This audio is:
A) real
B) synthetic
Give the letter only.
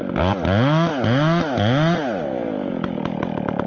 A